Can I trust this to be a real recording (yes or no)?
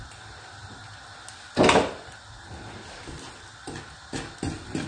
yes